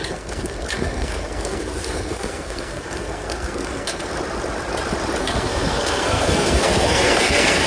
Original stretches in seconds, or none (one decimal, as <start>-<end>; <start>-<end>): 4.1-5.2